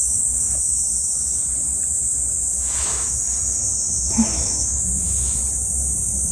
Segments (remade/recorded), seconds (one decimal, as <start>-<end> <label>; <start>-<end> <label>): 0.0-0.8 remade; 0.8-2.5 recorded; 2.5-5.4 remade; 5.4-6.3 recorded